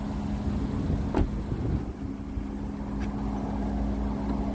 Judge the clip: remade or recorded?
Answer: recorded